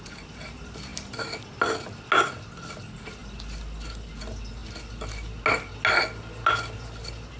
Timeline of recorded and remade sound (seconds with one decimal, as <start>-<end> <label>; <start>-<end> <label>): 0.0-7.4 recorded